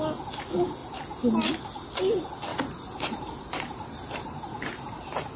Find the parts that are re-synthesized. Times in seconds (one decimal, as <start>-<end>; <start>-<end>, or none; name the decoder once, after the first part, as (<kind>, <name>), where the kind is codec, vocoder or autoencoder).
2.5-5.0 (vocoder, BigVGAN v2)